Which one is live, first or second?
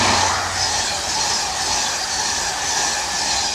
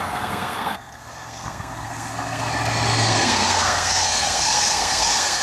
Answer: first